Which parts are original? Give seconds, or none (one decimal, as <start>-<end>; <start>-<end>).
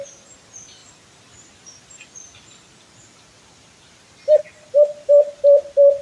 0.0-0.8; 4.4-6.0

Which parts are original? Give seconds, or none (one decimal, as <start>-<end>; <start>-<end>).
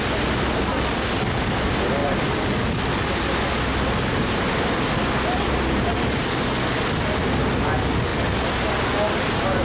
0.0-9.6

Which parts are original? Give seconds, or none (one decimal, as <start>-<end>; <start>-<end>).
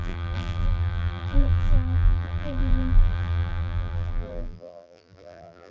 none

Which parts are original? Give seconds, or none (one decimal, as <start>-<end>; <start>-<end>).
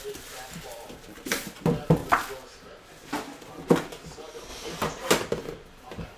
2.0-3.1; 4.5-5.1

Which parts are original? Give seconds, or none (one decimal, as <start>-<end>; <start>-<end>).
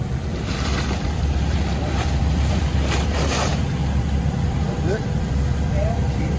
3.5-4.2